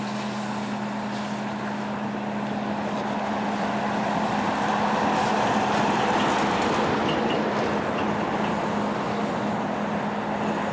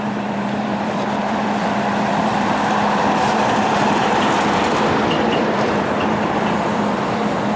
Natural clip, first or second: first